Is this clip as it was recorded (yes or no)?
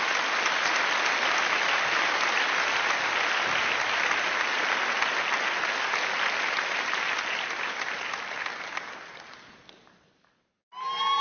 yes